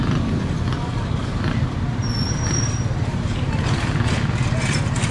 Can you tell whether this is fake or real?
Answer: real